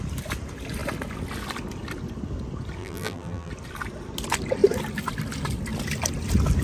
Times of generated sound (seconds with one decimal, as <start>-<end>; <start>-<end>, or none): 2.8-3.5